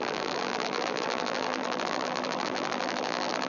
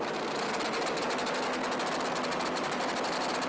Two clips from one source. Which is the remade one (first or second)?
first